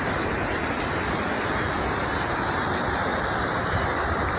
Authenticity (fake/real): real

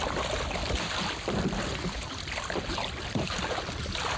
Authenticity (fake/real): fake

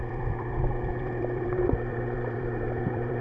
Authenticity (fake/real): fake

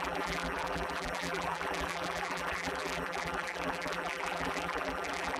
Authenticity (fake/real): fake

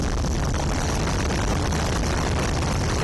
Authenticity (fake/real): real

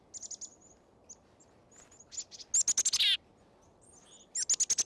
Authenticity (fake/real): real